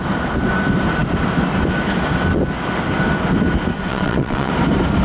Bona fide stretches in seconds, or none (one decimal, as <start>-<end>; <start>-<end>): 0.0-3.9; 4.5-5.0